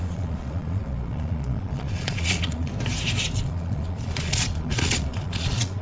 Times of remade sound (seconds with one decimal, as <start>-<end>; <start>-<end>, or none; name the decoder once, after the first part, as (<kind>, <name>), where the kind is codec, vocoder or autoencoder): 0.0-2.7 (vocoder, Vocos); 3.4-5.8